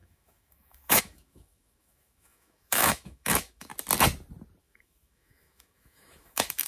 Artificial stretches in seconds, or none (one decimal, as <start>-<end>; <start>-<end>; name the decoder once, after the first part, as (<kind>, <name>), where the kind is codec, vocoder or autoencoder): 0.0-3.7 (autoencoder, DAC-VAE); 4.6-6.7